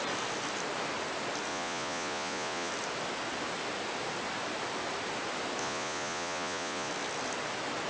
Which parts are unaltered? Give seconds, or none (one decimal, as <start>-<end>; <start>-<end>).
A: 0.0-1.5; 2.7-5.6; 6.9-7.9